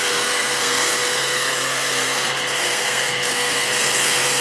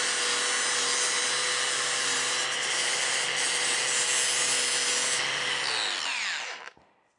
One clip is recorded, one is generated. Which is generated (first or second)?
first